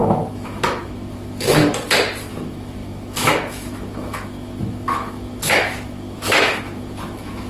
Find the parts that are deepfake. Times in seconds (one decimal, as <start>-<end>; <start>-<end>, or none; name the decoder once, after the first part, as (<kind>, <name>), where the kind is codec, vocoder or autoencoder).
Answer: 0.0-1.6 (autoencoder, DAC-VAE); 2.3-7.5

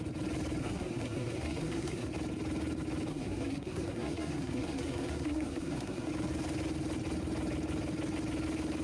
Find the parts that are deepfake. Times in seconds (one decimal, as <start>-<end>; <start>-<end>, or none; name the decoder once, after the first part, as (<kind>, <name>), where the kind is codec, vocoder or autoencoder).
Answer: 0.6-2.1 (codec, SNAC); 3.1-6.1

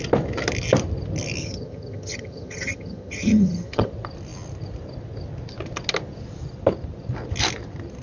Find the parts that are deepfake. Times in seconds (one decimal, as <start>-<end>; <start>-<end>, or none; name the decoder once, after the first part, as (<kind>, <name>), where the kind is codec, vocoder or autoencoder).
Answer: 1.4-3.9 (vocoder, HiFi-GAN)

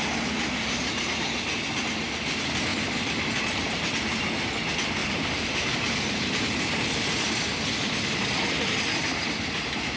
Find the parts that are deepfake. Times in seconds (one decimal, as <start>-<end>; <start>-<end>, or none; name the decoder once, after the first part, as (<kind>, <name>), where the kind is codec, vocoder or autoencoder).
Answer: 2.7-3.8 (vocoder, BigVGAN v2); 5.0-6.6

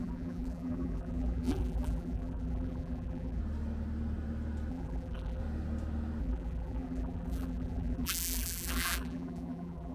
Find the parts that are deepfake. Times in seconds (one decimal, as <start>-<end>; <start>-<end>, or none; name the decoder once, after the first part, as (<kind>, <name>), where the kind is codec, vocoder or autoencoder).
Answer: 0.0-3.4 (vocoder, BigVGAN v2); 4.7-5.4; 6.2-9.9

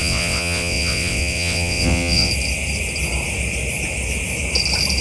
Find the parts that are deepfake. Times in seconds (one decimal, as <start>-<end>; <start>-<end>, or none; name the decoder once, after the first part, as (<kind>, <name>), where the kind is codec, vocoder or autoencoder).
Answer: 0.0-2.3 (vocoder, WaveNeXt)

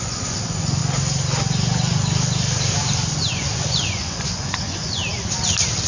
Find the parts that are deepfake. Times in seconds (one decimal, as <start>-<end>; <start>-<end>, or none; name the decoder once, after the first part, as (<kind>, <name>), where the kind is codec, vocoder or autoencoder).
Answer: 0.0-0.8 (vocoder, Vocos); 3.3-5.0

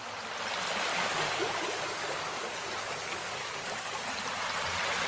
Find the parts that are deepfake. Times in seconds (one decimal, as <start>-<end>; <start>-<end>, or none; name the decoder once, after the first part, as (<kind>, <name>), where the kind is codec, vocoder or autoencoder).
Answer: 0.9-4.0 (codec, DAC)